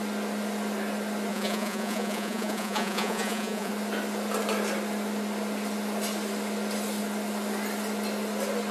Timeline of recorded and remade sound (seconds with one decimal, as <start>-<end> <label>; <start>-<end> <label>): 0.0-1.3 recorded; 1.3-3.7 remade; 3.7-8.7 recorded

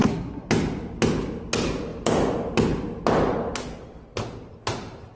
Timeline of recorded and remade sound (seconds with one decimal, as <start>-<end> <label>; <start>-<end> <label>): 0.0-0.5 remade; 0.5-5.2 recorded

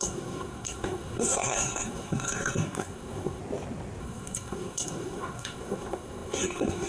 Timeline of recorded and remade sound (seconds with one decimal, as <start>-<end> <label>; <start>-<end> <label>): 0.0-3.4 remade; 3.4-4.0 recorded; 4.0-6.9 remade

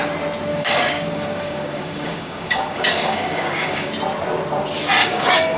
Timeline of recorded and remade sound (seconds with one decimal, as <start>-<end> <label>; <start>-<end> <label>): 0.0-0.5 recorded; 0.5-3.9 remade; 3.9-5.0 recorded; 5.0-5.6 remade